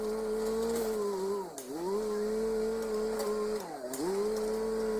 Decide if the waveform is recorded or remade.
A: recorded